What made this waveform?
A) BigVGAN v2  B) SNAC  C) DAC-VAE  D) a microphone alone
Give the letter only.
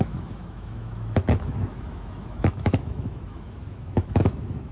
C